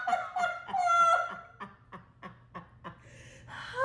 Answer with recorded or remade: recorded